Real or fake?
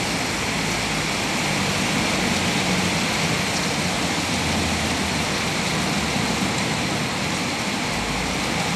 real